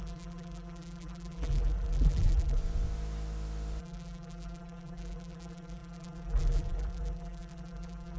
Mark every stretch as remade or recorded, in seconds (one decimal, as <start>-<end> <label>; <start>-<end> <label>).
0.0-2.6 remade; 2.6-3.8 recorded; 3.8-8.2 remade